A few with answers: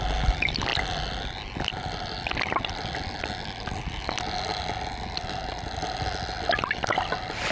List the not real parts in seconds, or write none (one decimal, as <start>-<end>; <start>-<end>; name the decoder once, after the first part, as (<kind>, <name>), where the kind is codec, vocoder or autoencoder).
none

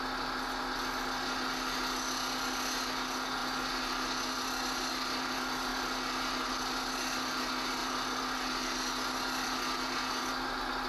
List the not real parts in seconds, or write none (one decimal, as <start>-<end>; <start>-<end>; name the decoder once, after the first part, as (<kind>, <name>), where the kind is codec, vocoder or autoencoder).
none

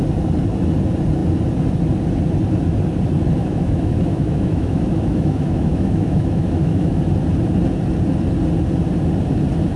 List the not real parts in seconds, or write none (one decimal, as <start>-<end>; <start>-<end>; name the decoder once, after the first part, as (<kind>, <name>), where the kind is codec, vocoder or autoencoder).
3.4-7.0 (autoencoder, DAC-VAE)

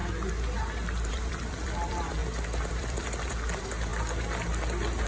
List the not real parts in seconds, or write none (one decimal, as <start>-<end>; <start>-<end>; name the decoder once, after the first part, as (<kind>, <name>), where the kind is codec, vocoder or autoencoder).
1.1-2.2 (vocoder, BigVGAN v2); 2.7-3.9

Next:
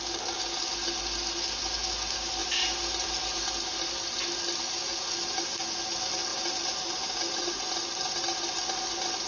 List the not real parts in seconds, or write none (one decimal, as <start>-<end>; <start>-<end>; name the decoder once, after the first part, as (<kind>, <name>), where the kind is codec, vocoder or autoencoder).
6.3-7.6 (vocoder, BigVGAN v2)

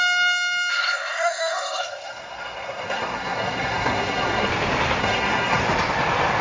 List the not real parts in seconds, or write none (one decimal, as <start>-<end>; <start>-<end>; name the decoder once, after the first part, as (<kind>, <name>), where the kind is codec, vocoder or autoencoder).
0.7-4.5 (codec, SNAC); 5.0-5.6

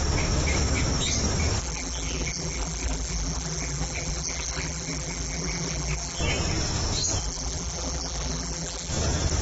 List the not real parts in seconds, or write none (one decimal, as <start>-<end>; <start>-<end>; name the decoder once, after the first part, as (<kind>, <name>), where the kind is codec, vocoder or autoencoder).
1.6-6.2 (vocoder, BigVGAN v2); 7.2-8.9

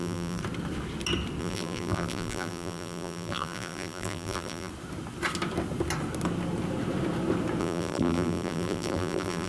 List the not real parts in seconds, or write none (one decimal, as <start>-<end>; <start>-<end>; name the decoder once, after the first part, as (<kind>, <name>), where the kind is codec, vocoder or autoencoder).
0.0-0.4 (vocoder, BigVGAN v2); 1.4-4.7; 7.6-9.5